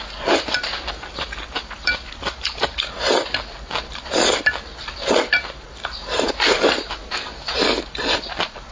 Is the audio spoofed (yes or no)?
yes